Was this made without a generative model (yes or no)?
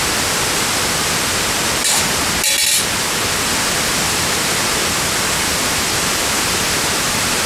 yes